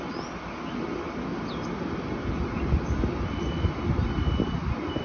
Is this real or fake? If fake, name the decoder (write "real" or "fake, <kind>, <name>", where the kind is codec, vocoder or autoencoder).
real